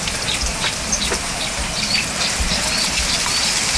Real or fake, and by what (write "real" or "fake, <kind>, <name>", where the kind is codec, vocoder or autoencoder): real